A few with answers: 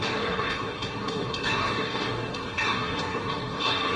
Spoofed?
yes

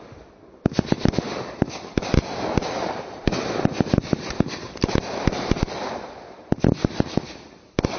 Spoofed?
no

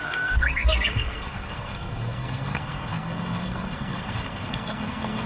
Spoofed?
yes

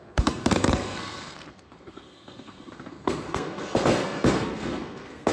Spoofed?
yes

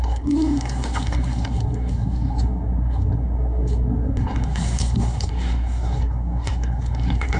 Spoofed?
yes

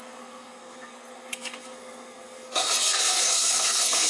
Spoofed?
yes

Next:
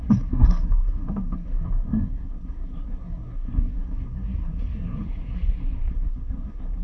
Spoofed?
yes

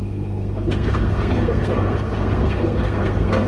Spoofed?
yes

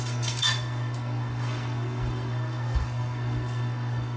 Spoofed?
yes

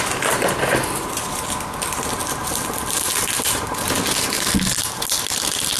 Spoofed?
no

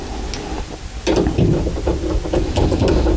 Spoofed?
no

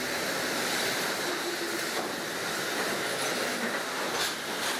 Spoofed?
no